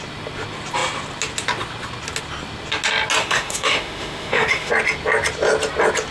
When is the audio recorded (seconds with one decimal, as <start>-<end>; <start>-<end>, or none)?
0.0-3.2; 4.7-6.1